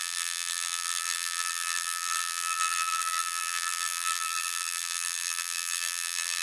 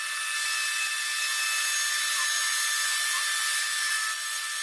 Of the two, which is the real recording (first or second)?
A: second